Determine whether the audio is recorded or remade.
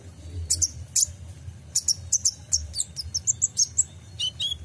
recorded